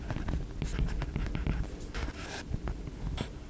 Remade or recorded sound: recorded